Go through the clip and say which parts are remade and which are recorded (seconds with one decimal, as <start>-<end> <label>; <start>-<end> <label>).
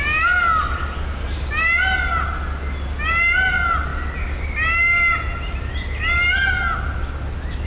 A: 0.0-7.7 recorded